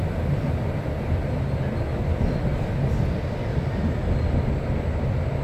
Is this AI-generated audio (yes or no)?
no